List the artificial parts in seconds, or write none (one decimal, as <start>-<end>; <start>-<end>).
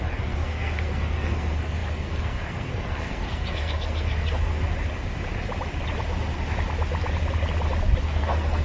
0.0-4.5; 8.0-8.6